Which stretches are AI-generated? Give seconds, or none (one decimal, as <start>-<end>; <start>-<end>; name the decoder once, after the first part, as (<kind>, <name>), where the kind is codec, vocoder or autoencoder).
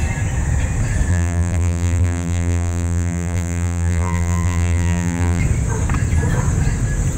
1.1-5.4 (vocoder, BigVGAN v2)